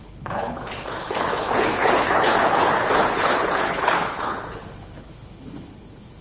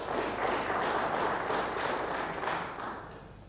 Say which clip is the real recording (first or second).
second